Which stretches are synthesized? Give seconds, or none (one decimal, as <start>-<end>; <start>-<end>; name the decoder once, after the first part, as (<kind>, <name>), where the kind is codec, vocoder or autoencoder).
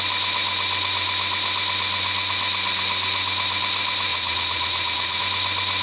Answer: 4.1-5.2 (vocoder, Vocos)